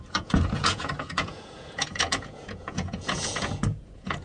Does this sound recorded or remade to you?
remade